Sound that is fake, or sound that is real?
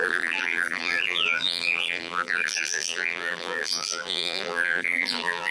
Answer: fake